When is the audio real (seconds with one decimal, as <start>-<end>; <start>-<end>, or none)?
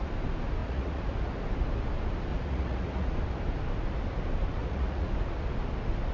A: 0.0-0.6; 1.3-2.3; 3.1-4.6; 5.1-6.1